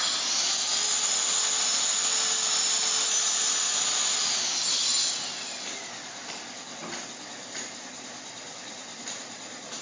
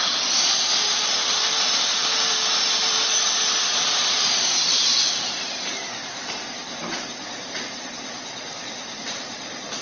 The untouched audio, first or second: first